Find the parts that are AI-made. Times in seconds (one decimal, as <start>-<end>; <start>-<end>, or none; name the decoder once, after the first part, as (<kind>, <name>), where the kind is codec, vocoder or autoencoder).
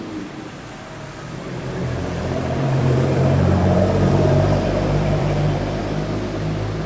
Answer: 1.8-5.8 (vocoder, BigVGAN v2)